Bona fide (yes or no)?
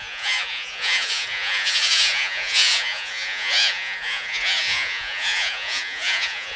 no